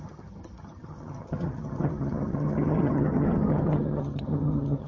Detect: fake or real fake